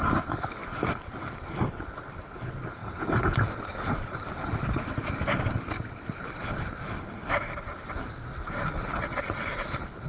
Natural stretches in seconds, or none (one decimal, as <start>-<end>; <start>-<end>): 0.0-2.8; 4.9-10.1

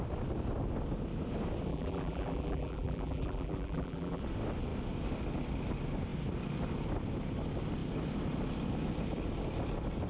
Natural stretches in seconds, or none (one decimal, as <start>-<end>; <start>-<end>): 0.0-1.7; 4.2-10.1

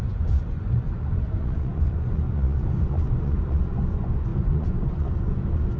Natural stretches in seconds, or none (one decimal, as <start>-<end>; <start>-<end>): none

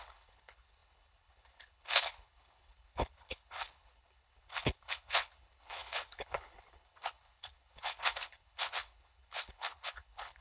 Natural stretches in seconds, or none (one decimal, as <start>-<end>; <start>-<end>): none

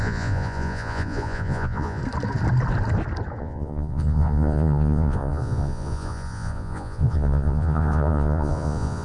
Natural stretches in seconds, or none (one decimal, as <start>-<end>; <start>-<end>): 2.0-3.4